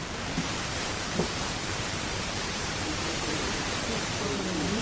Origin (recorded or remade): remade